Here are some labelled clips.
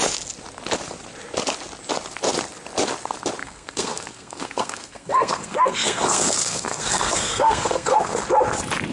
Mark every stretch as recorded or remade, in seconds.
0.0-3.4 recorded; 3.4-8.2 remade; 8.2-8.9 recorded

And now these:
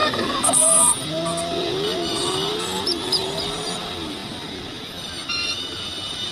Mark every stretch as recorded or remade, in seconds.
0.0-0.8 remade; 0.8-6.3 recorded

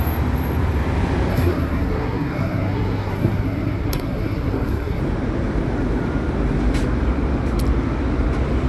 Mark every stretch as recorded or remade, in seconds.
0.0-1.3 recorded; 1.3-5.0 remade; 5.0-8.7 recorded

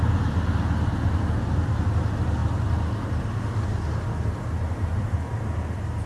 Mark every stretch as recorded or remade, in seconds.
0.0-6.1 recorded